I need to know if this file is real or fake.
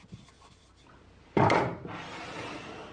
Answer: real